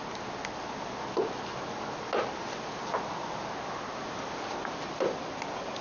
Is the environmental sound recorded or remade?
recorded